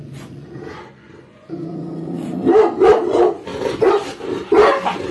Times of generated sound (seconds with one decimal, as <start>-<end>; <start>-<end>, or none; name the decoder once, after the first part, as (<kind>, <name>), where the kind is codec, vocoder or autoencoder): 0.0-2.4 (vocoder, Vocos); 3.1-3.5